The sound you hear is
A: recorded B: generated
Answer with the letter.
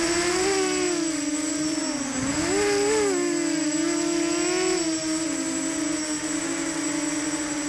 A